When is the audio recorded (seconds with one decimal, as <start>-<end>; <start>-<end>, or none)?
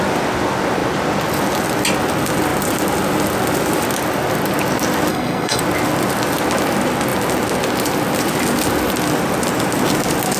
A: 0.0-5.1; 5.6-10.4